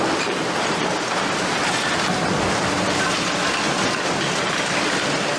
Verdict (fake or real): real